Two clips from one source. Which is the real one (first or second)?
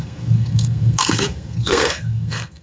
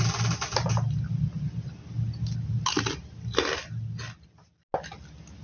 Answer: second